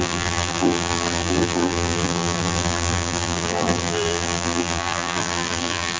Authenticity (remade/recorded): remade